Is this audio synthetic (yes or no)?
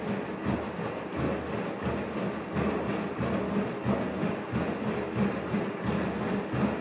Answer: no